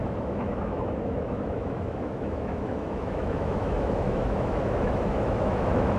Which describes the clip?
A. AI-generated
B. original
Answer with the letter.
A